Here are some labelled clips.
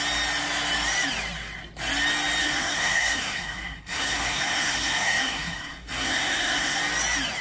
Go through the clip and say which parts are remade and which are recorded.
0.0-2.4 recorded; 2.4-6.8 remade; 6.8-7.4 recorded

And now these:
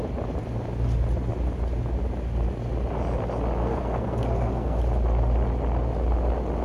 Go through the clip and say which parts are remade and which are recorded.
0.0-3.6 recorded; 3.6-4.8 remade; 4.8-6.6 recorded

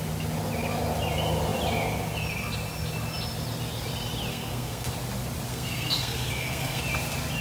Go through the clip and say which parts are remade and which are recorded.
0.0-4.3 recorded; 4.3-4.9 remade; 4.9-5.5 recorded; 5.5-6.8 remade; 6.8-7.4 recorded